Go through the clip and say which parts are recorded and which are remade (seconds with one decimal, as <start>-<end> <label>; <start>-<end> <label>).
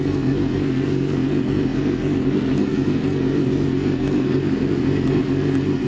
0.0-5.9 remade